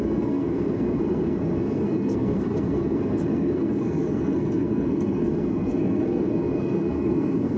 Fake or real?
fake